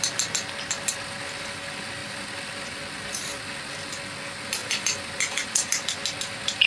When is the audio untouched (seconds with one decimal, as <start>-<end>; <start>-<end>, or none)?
0.0-2.0; 3.4-4.6; 5.2-6.7